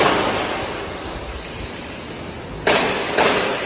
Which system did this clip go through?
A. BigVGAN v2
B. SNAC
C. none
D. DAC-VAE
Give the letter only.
C